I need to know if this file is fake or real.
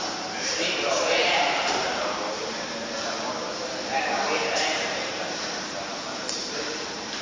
fake